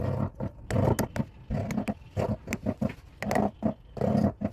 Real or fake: real